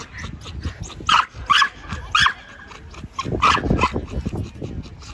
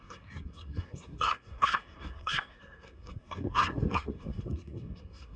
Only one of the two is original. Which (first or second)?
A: first